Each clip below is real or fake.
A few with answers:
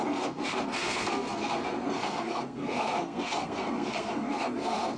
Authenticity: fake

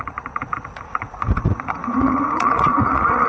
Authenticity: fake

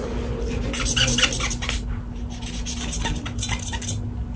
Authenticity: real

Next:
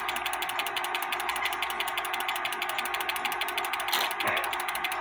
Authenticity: real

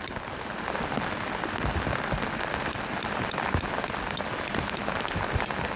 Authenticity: real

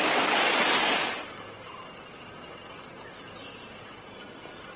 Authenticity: real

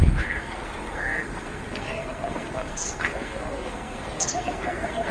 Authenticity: fake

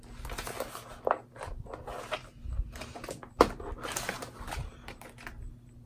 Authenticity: real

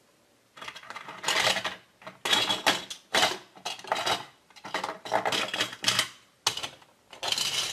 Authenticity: real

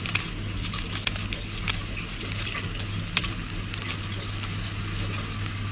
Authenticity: real